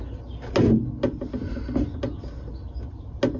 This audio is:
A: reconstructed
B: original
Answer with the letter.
B